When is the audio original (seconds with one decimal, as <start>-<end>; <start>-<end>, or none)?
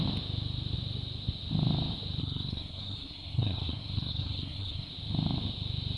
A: 0.0-2.2; 4.9-6.0